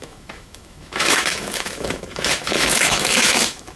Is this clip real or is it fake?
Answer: fake